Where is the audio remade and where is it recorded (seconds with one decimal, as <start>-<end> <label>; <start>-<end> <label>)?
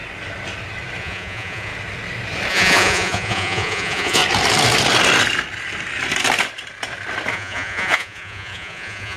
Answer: 0.0-1.0 recorded; 1.0-1.7 remade; 1.7-2.5 recorded; 2.5-4.2 remade; 4.2-7.3 recorded; 7.3-9.2 remade